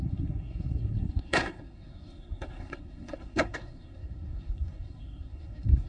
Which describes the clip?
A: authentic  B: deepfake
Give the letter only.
B